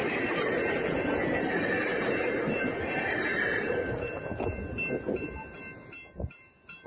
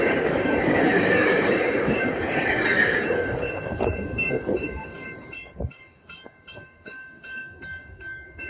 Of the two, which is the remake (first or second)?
second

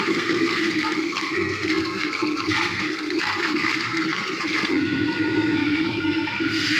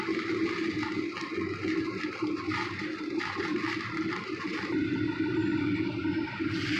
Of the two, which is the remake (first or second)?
first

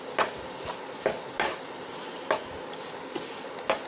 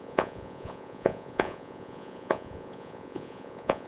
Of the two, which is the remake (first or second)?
second